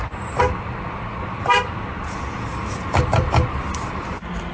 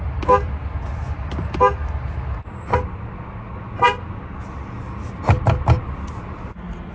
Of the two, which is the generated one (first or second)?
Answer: first